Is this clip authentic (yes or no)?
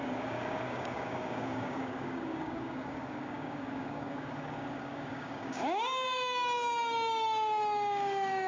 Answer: no